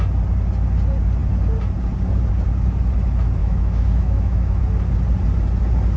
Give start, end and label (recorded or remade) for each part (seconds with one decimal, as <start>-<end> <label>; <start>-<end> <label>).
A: 0.0-3.4 recorded; 3.4-4.6 remade; 4.6-6.0 recorded